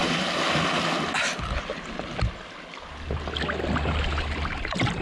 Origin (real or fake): real